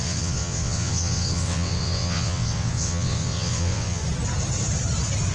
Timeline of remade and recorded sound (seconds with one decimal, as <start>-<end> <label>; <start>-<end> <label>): 0.0-4.0 remade; 4.0-5.3 recorded